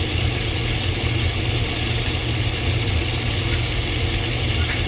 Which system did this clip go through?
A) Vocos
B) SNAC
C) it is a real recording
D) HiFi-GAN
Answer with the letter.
C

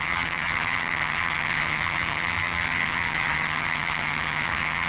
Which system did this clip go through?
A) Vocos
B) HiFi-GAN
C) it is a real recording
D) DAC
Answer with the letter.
B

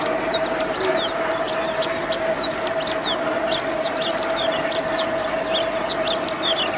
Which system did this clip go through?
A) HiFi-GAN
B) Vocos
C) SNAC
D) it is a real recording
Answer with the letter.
D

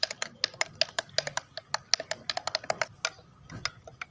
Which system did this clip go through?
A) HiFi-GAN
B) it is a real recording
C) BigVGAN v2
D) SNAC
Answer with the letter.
B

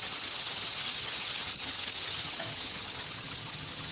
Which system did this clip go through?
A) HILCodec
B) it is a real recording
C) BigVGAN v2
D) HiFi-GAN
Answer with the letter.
D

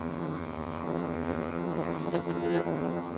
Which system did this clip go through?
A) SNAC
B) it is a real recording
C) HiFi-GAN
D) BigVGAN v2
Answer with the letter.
C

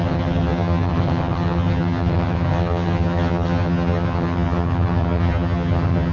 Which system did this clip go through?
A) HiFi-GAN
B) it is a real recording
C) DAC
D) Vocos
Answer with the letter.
A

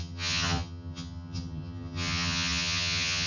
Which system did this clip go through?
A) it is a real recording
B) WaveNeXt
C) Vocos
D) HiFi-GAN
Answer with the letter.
D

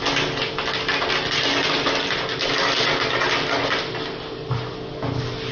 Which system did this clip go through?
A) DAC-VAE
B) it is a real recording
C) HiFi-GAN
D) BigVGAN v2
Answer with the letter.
B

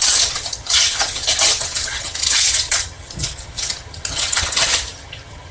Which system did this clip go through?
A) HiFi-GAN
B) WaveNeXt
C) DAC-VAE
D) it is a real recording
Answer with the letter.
A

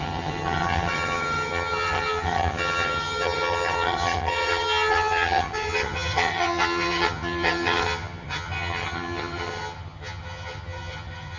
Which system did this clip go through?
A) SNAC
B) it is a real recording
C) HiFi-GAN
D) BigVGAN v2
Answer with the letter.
C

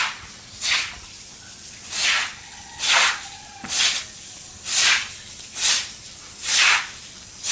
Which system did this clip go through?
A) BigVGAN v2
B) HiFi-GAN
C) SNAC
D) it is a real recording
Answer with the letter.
D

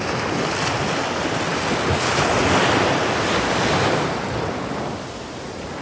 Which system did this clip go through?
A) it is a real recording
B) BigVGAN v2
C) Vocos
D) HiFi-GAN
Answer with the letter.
A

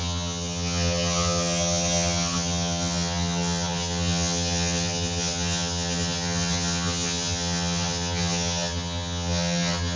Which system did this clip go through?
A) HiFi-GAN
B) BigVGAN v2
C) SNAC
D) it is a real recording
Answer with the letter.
A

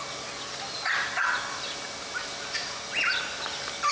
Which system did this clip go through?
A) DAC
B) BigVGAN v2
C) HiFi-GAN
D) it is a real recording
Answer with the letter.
D